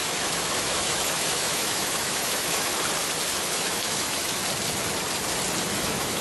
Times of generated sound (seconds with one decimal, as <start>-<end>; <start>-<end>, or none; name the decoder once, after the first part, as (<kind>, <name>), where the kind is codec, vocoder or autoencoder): 0.0-2.7 (autoencoder, DAC-VAE); 3.5-4.4; 5.8-6.2